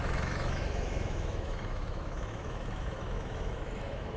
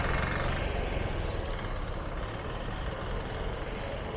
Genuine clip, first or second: second